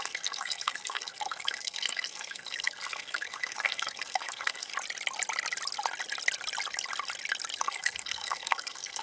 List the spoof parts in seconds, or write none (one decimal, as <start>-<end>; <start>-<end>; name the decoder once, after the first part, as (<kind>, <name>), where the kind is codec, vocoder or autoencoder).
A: 0.0-4.7 (codec, SNAC); 7.6-9.0